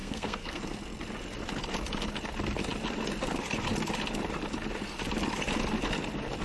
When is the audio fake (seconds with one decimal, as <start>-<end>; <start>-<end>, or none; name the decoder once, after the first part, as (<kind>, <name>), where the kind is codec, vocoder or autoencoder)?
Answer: 0.0-0.6 (codec, SNAC)